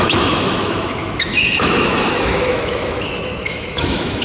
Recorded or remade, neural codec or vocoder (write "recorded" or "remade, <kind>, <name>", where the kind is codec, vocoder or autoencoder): remade, autoencoder, DAC-VAE